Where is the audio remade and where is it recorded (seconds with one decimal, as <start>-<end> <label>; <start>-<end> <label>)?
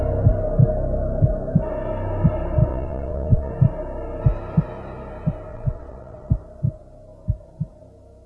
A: 0.0-2.7 recorded; 2.7-3.5 remade; 3.5-5.5 recorded; 5.5-6.3 remade; 6.3-8.3 recorded